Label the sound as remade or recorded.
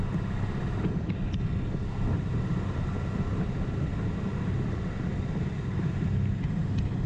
recorded